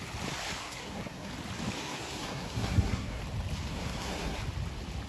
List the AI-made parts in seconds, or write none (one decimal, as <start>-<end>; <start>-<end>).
0.6-1.3; 1.8-3.2; 3.7-4.4